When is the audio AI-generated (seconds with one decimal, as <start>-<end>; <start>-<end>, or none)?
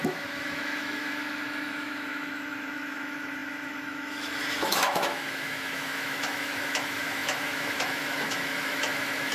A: 0.0-9.3